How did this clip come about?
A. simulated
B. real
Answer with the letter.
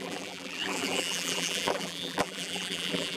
A